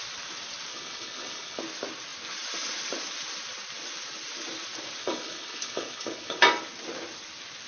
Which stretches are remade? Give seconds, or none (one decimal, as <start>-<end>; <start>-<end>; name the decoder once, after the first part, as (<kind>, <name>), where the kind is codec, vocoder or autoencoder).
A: 0.7-1.6 (codec, HILCodec); 5.0-6.4